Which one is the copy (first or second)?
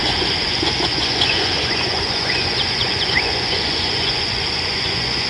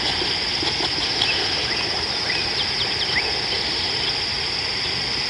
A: first